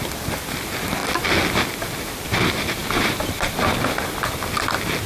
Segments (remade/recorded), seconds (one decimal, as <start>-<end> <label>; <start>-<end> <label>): 0.0-5.1 recorded

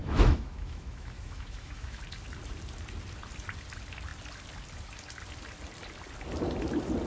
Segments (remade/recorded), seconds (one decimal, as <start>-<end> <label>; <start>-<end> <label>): 0.0-2.0 remade; 2.0-7.1 recorded

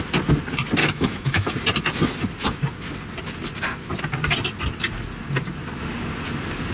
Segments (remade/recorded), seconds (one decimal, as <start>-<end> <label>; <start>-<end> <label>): 0.0-0.8 recorded; 0.8-1.5 remade; 1.5-6.7 recorded